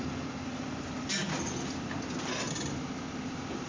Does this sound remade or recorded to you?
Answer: recorded